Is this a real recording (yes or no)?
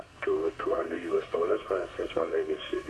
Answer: no